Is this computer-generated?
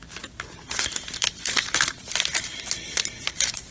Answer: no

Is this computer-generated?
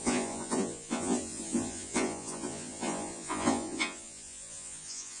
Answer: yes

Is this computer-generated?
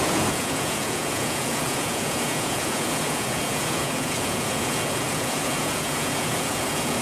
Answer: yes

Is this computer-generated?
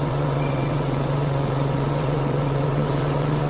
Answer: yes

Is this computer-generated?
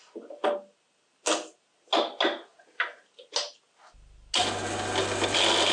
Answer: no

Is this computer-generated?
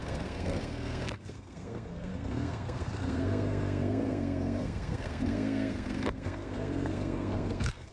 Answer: yes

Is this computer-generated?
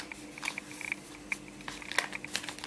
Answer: no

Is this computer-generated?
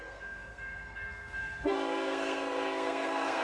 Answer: yes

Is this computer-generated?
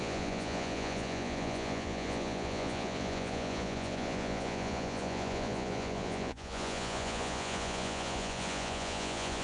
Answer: yes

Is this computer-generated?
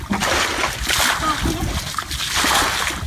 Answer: no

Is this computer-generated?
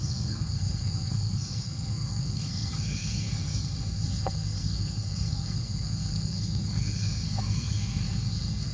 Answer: yes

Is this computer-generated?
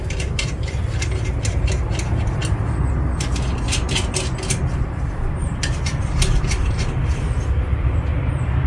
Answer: no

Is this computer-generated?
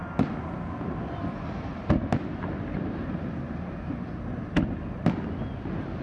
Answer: no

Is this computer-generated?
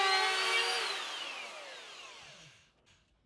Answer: no